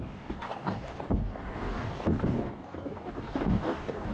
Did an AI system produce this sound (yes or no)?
yes